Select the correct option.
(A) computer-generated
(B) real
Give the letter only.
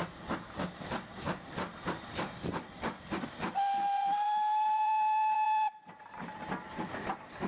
A